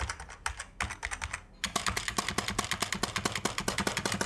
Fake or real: real